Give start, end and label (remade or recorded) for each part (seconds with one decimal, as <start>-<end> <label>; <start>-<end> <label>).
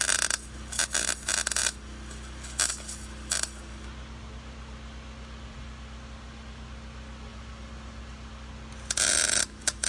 0.0-7.3 recorded; 7.3-8.3 remade; 8.3-9.9 recorded